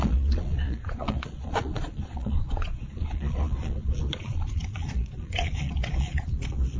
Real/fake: fake